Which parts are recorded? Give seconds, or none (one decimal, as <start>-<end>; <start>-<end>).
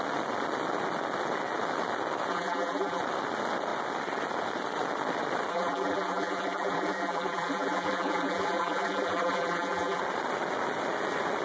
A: 0.0-2.3; 3.0-5.5; 10.0-11.4